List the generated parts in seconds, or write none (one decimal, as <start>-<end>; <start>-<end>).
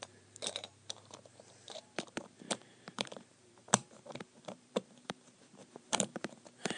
0.0-6.8